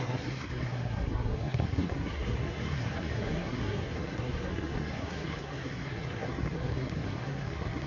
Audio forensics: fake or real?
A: fake